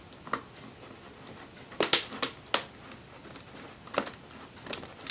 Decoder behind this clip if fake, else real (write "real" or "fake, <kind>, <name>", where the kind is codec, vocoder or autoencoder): real